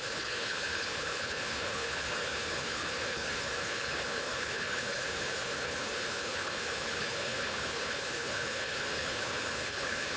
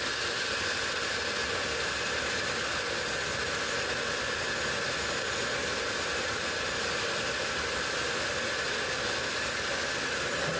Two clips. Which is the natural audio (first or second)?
second